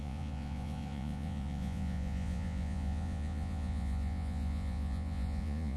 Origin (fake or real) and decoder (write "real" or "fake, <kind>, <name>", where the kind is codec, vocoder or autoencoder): fake, vocoder, Vocos